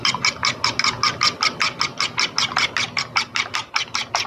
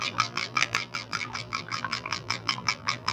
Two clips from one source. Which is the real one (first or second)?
first